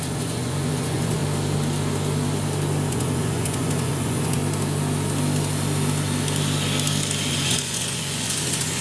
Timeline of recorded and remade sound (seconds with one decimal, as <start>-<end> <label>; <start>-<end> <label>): 0.0-1.2 remade; 1.2-2.9 recorded; 2.9-4.4 remade; 4.4-7.3 recorded; 7.3-8.8 remade

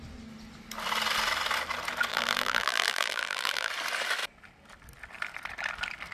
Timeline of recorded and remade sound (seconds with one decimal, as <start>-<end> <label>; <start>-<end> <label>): 0.0-2.1 recorded; 2.1-3.7 remade; 3.7-6.1 recorded

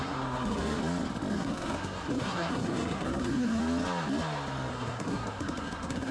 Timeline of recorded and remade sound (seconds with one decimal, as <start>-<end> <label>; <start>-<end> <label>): 0.0-0.8 remade; 0.8-1.3 recorded; 1.3-3.6 remade; 3.6-4.7 recorded; 4.7-6.1 remade